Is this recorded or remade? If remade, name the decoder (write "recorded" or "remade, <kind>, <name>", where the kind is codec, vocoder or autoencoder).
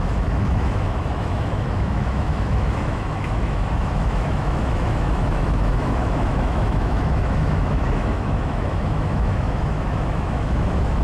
remade, autoencoder, DAC-VAE